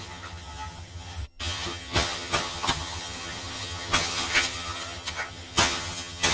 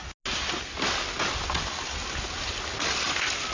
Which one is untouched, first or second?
second